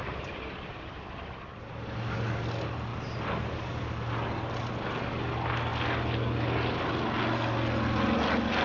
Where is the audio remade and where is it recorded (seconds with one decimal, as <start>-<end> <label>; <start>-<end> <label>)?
0.0-8.6 recorded